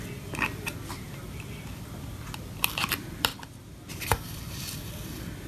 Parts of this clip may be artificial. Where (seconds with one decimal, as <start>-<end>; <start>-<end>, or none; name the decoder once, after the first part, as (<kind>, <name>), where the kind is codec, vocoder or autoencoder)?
0.0-3.3 (vocoder, BigVGAN v2); 3.9-5.5